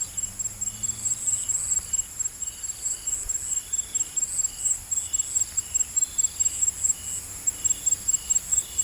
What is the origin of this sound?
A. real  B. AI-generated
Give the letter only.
A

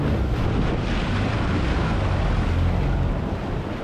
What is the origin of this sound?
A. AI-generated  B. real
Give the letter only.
B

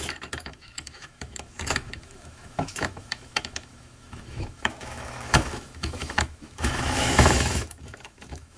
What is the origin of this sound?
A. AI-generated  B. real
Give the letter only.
A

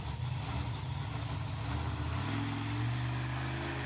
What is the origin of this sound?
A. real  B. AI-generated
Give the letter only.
A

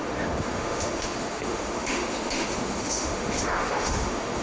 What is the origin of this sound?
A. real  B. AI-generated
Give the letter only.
B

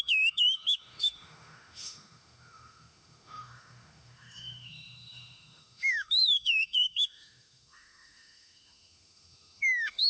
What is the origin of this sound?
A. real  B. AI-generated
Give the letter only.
B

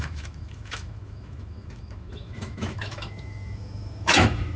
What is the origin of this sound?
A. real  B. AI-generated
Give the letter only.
B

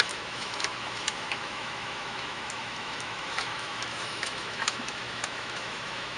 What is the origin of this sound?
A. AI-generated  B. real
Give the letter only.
A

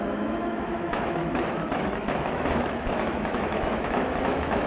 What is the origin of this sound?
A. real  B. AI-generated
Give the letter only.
B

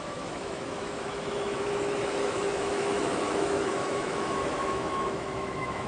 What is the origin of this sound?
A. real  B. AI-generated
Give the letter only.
B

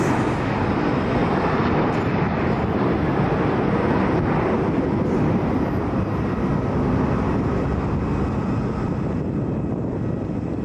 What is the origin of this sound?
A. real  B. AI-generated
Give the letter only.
A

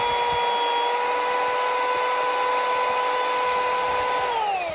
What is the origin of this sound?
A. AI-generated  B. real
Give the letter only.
B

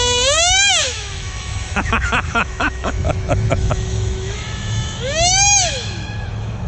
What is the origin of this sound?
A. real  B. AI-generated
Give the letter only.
B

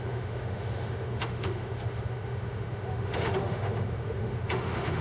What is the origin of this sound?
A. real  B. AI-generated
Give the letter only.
B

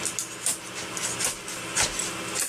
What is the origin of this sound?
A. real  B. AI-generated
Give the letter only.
A